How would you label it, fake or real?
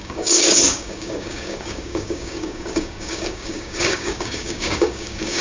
fake